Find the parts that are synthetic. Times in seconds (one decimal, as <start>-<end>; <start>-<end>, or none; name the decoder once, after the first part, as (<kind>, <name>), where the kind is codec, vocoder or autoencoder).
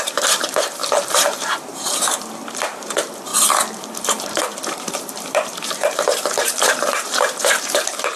0.0-3.3 (vocoder, BigVGAN v2); 3.9-8.2